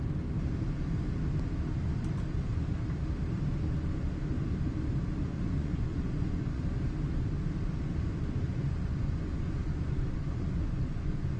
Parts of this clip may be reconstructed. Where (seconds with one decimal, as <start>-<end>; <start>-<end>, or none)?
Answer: 5.3-6.6; 8.1-11.4